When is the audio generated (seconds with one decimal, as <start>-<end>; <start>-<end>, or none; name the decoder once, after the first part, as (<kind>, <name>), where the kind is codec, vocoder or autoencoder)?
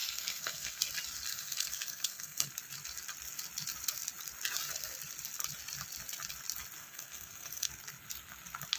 0.0-0.8 (codec, SNAC); 1.3-2.5; 6.8-7.7